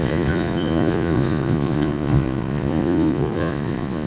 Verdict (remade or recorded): remade